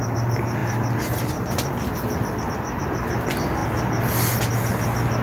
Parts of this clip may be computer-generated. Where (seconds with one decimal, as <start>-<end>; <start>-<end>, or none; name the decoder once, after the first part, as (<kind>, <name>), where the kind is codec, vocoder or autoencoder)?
none